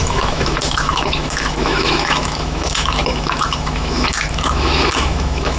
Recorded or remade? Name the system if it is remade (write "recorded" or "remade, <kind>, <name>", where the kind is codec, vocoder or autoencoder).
remade, autoencoder, DAC-VAE